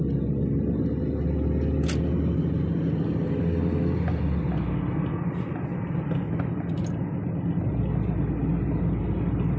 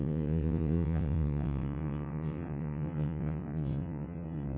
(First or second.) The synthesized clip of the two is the second